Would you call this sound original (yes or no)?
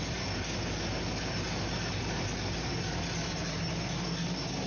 yes